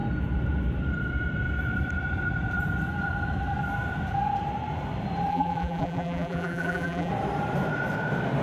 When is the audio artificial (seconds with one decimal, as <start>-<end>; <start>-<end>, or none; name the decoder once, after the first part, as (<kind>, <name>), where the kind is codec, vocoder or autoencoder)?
5.3-7.1 (vocoder, BigVGAN v2)